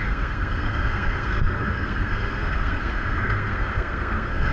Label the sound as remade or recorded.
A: remade